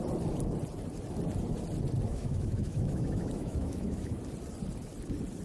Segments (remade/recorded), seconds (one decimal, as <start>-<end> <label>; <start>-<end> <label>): 0.0-2.1 recorded; 2.1-4.2 remade; 4.2-5.4 recorded

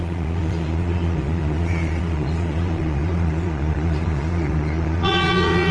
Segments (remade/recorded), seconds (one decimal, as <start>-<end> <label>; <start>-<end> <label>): 0.0-5.7 remade

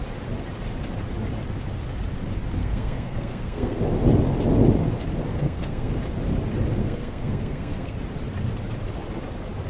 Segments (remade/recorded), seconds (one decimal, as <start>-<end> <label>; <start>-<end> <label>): 0.0-2.6 recorded; 2.6-3.8 remade; 3.8-5.3 recorded; 5.3-5.9 remade; 5.9-6.8 recorded; 6.8-8.0 remade; 8.0-9.7 recorded

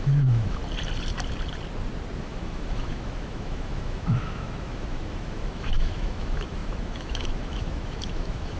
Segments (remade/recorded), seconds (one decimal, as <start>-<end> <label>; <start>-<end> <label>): 0.0-0.6 remade; 0.6-2.2 recorded; 2.2-8.6 remade